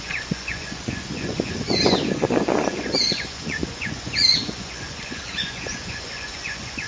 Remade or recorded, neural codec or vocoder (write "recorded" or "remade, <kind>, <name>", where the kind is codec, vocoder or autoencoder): remade, vocoder, Vocos